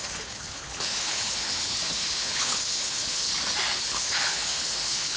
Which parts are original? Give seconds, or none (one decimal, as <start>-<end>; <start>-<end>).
3.3-3.8